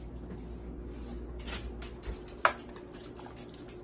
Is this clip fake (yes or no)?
no